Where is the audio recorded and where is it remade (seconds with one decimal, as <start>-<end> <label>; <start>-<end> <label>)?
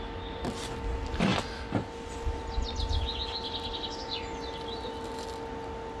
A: 0.0-6.0 recorded